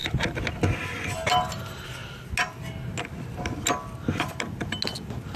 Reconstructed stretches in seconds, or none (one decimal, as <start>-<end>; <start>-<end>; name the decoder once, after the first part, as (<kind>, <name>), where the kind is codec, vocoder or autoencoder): none